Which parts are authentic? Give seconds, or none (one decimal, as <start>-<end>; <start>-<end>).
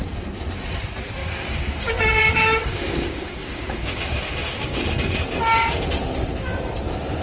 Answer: 0.0-1.2; 2.2-2.6; 5.2-7.2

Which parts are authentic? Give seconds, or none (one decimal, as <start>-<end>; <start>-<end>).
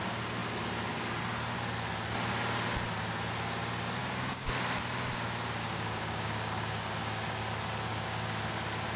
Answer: 0.0-4.0; 4.5-5.6; 7.4-7.9; 8.4-9.0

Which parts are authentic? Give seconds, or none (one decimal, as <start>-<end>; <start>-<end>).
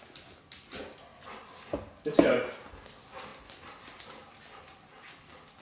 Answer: 0.0-5.6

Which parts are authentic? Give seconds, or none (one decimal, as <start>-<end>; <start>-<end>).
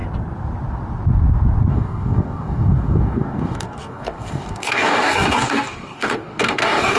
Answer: 0.0-1.7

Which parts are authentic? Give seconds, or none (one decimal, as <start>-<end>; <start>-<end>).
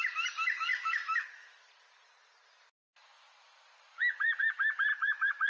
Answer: 0.0-0.7; 1.3-4.9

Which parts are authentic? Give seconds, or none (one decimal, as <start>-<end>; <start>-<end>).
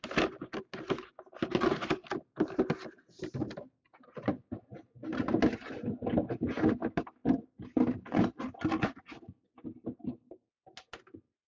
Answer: 0.0-11.5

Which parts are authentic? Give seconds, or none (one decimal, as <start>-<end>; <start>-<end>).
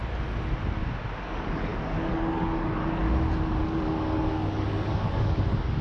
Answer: 0.0-1.2; 3.0-3.6